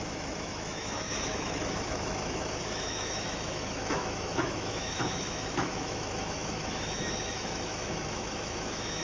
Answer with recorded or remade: remade